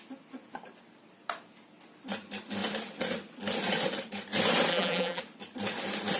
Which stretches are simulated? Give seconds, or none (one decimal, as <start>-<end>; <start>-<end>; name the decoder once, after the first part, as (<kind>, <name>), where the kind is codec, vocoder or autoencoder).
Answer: 4.7-5.2 (vocoder, BigVGAN v2)